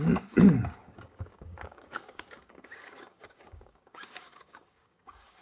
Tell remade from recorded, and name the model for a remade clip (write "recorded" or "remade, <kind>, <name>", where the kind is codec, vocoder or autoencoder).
remade, codec, DAC